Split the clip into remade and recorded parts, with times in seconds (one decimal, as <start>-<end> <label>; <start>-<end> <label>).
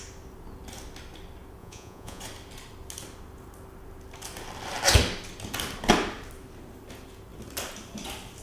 0.0-1.6 recorded; 1.6-2.2 remade; 2.2-8.4 recorded